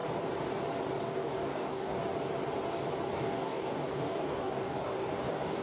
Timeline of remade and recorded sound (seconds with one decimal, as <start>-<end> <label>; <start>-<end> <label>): 0.0-1.0 recorded; 1.0-2.0 remade; 2.0-3.1 recorded; 3.1-5.6 remade